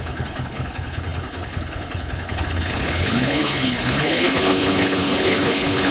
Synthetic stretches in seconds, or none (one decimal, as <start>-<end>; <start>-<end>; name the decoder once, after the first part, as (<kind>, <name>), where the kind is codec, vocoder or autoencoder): 0.0-5.9 (codec, HILCodec)